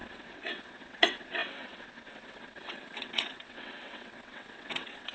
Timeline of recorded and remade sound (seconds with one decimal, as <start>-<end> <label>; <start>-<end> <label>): 0.0-5.1 remade